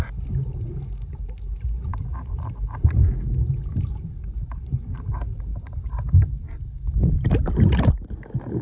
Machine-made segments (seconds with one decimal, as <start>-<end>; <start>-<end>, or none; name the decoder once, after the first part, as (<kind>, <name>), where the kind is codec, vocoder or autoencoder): 5.5-6.5 (vocoder, BigVGAN v2)

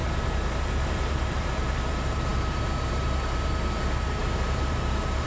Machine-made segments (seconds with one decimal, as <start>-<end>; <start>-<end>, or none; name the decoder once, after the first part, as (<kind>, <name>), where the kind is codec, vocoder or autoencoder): 0.0-5.3 (vocoder, BigVGAN v2)

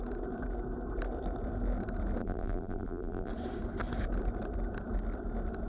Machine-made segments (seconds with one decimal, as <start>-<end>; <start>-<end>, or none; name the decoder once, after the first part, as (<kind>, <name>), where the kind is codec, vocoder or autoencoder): 2.2-3.3 (vocoder, BigVGAN v2)

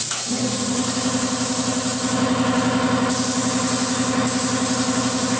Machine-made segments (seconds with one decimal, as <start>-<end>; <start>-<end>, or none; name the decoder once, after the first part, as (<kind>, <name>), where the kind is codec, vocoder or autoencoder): none